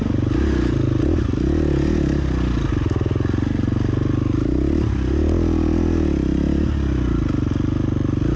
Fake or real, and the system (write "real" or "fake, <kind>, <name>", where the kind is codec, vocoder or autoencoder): real